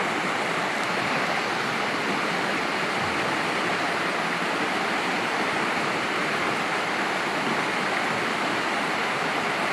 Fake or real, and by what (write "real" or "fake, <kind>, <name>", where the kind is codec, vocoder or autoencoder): real